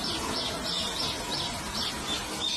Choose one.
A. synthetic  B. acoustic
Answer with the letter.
B